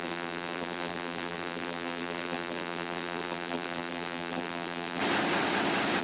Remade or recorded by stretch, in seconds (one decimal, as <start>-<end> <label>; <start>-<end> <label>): 0.0-5.0 remade; 5.0-6.0 recorded

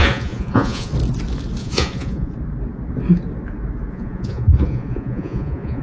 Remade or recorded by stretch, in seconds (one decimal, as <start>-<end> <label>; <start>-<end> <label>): 0.0-0.9 remade; 0.9-1.6 recorded; 1.6-2.3 remade; 2.3-3.9 recorded; 3.9-5.8 remade

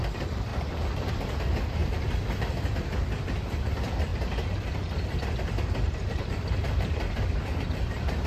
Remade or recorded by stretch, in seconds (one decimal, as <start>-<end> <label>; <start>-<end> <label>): 0.0-8.3 remade

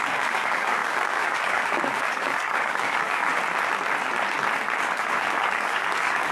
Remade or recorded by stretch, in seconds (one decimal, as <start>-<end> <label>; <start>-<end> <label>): 0.0-3.3 remade; 3.3-4.8 recorded; 4.8-6.3 remade

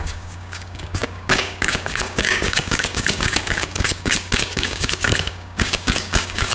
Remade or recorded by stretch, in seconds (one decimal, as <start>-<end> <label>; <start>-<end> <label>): 0.0-6.5 remade